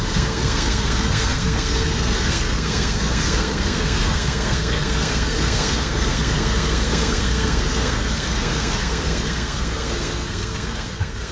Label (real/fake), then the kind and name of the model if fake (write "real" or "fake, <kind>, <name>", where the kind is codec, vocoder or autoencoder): fake, codec, SNAC